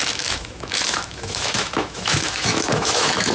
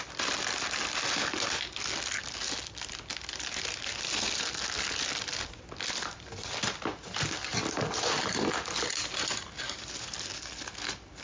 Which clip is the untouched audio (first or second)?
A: second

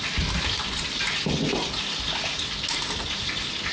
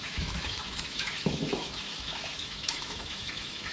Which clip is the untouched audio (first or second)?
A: first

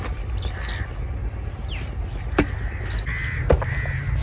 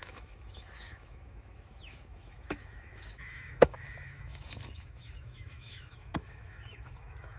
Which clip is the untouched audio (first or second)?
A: first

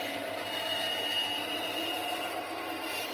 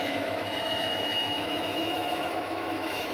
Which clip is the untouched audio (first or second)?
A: first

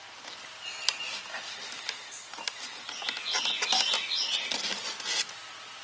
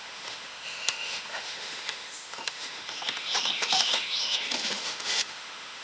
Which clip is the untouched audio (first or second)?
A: first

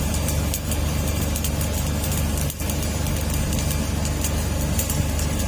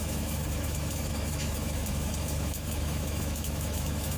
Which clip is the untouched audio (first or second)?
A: first